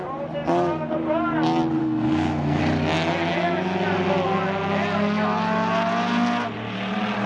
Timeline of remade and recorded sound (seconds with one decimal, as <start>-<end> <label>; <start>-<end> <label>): 0.0-1.8 recorded; 1.8-2.6 remade; 2.6-7.3 recorded